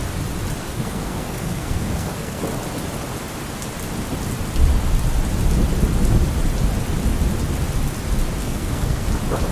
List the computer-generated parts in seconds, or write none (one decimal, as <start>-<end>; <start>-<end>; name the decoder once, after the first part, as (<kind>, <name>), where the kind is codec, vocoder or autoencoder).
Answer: 0.6-2.4 (codec, SNAC); 8.4-9.1